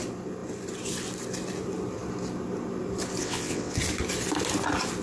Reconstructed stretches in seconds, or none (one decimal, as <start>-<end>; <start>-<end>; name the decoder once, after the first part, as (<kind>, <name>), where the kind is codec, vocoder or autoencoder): 3.2-3.8 (vocoder, WaveNeXt)